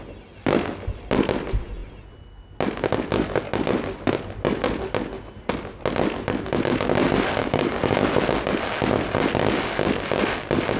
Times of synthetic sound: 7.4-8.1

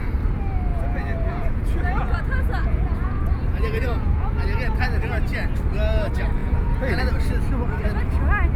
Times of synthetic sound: 0.7-4.3; 6.4-7.0